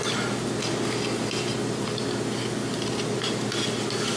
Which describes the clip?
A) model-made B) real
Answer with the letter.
B